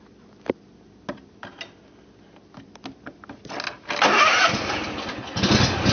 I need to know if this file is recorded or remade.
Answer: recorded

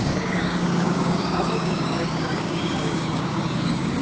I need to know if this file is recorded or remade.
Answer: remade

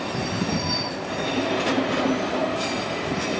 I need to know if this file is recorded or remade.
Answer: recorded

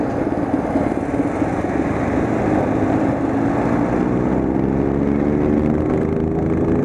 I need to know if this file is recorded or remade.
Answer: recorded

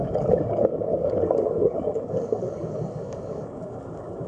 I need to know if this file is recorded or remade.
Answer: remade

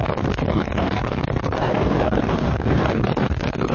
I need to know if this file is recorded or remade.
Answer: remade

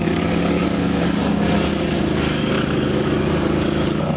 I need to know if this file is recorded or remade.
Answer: remade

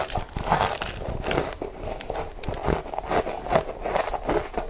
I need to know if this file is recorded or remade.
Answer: recorded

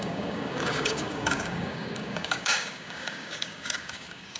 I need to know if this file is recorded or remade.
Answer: remade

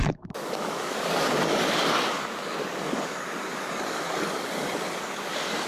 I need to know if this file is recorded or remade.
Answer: remade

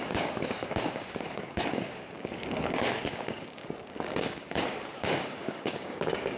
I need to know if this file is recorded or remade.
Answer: remade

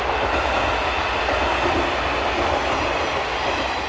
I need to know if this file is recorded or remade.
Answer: recorded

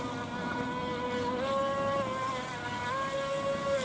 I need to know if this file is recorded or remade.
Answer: recorded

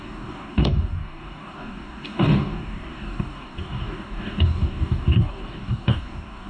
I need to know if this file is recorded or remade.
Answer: remade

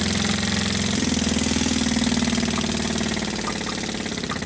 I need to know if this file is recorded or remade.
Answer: recorded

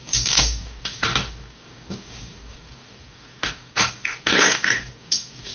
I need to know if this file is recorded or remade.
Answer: remade